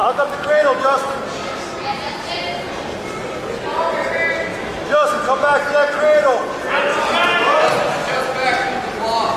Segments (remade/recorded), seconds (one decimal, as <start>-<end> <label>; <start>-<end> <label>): 0.0-1.2 remade; 1.2-4.5 recorded; 4.5-5.1 remade; 5.1-9.4 recorded